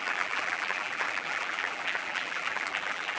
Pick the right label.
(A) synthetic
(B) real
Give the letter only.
A